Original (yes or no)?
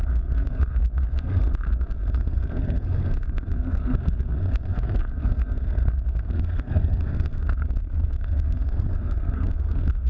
no